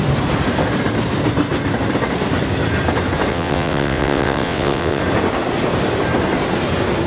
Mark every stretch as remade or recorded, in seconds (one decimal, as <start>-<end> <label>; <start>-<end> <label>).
0.0-3.3 recorded; 3.3-5.0 remade; 5.0-7.1 recorded